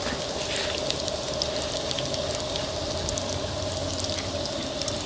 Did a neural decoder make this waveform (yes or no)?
no